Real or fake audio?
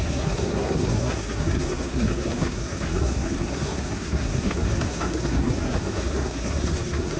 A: fake